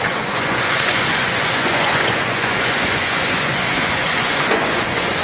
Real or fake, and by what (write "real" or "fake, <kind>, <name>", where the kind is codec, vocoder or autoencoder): fake, vocoder, Vocos